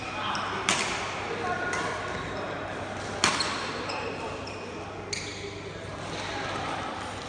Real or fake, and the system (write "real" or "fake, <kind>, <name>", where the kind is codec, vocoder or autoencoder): real